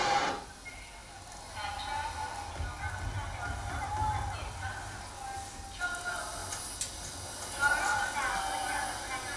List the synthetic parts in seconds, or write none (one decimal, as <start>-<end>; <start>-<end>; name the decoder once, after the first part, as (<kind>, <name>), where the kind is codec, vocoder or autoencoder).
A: none